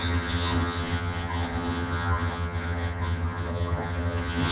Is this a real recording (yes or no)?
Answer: no